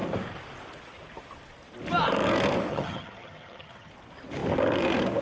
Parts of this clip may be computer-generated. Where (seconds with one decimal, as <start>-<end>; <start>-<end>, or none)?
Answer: 2.7-3.9